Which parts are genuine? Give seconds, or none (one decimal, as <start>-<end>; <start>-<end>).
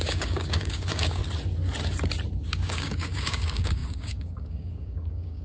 1.2-2.4